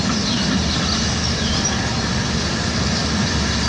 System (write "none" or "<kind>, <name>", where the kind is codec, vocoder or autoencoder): none